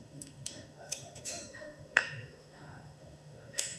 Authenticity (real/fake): fake